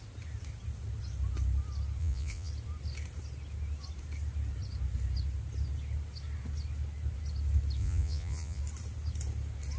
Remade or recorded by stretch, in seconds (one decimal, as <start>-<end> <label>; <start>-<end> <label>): 0.0-2.0 recorded; 2.0-2.5 remade; 2.5-7.8 recorded; 7.8-8.6 remade; 8.6-9.8 recorded